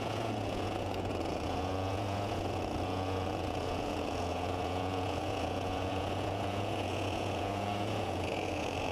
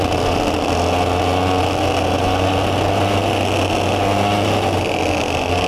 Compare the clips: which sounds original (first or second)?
second